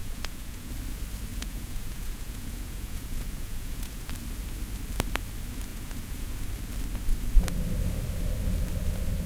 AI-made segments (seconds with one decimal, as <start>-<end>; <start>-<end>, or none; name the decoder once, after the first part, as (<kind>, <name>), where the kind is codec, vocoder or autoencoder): 0.0-0.7 (vocoder, Vocos); 1.3-4.1; 5.7-6.4